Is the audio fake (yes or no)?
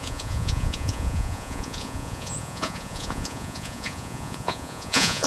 yes